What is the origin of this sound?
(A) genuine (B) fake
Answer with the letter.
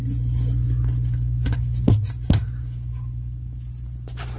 A